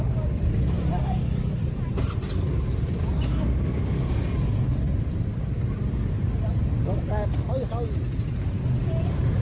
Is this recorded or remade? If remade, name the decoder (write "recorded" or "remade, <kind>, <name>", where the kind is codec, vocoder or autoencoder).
recorded